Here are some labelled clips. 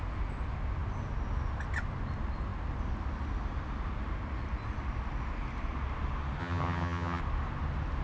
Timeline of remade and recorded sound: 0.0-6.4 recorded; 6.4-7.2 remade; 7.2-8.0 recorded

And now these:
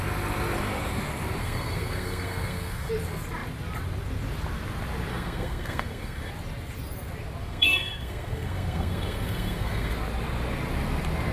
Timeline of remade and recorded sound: 0.0-1.4 recorded; 1.4-2.9 remade; 2.9-5.1 recorded; 5.1-6.3 remade; 6.3-7.4 recorded; 7.4-9.9 remade; 9.9-11.3 recorded

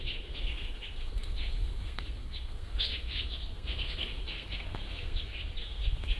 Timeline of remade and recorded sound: 0.0-6.2 remade

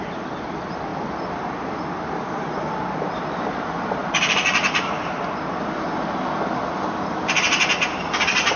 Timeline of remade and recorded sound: 0.0-8.6 recorded

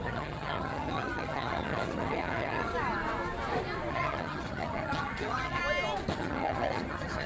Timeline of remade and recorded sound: 0.0-2.7 remade; 2.7-3.9 recorded; 3.9-5.6 remade; 5.6-6.1 recorded; 6.1-7.3 remade

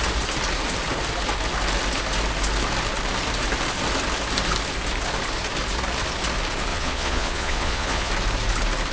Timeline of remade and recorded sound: 0.0-6.7 recorded; 6.7-8.1 remade; 8.1-8.9 recorded